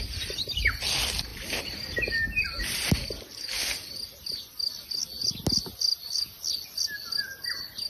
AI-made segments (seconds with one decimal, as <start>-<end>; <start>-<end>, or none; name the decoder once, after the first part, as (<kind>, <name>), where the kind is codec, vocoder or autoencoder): none